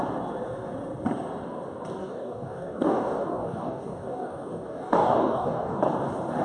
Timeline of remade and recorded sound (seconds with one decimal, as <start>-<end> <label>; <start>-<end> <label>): 0.0-2.0 recorded; 2.0-5.8 remade; 5.8-6.4 recorded